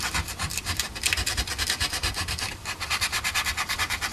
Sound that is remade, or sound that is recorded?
remade